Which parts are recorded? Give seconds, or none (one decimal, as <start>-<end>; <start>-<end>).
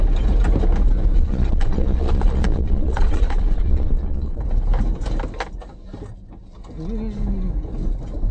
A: 0.0-1.1; 4.4-8.3